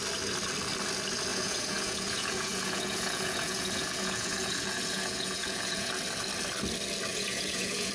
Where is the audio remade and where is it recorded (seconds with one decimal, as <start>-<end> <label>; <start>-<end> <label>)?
0.0-1.3 recorded; 1.3-5.9 remade; 5.9-7.1 recorded; 7.1-7.9 remade